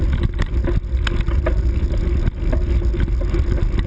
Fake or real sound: real